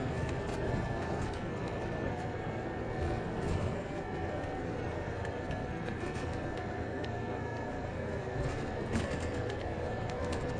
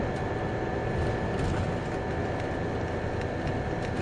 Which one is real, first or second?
second